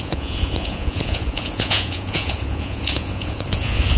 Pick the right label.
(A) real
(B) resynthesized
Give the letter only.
B